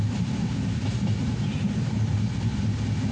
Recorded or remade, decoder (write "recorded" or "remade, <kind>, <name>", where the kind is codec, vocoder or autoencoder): recorded